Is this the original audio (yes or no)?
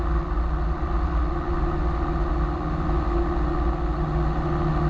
yes